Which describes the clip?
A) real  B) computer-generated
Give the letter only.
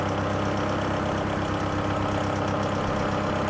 A